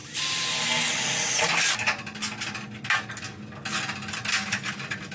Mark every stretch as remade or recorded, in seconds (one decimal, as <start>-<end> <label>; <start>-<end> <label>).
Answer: 0.0-5.1 recorded